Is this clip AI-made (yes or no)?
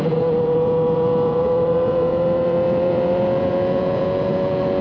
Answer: yes